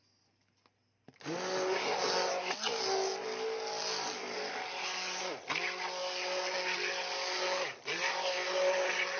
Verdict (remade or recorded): recorded